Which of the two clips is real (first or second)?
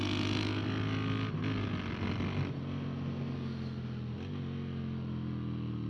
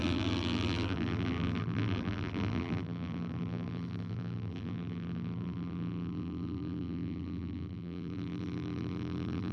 first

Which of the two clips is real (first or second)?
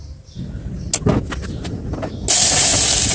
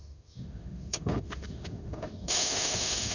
first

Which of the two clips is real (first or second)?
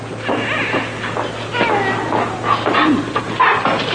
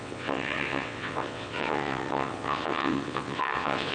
first